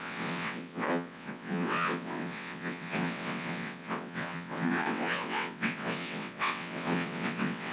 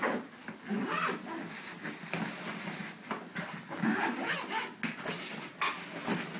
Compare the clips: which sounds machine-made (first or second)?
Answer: first